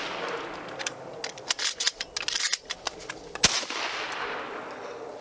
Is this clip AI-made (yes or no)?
no